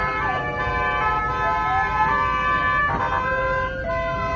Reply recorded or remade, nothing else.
recorded